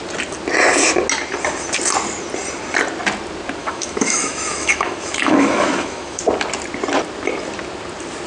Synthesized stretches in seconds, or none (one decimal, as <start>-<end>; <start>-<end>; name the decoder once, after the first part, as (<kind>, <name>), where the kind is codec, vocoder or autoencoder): 3.6-6.2 (autoencoder, DAC-VAE)